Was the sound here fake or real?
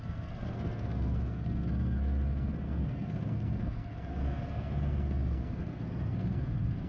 fake